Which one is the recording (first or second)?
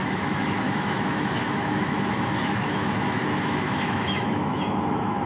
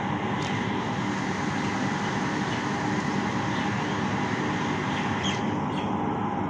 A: second